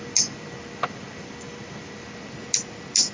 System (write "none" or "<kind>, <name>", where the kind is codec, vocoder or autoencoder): none